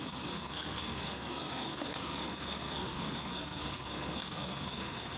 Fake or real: fake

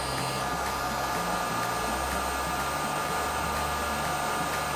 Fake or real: real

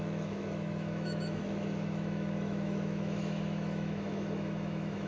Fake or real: fake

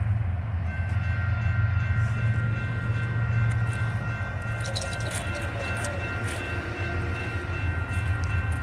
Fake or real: real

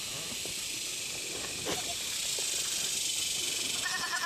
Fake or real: real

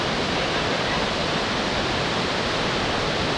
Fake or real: real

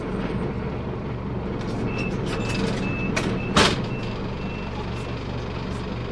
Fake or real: real